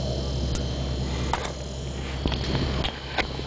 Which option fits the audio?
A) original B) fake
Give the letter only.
A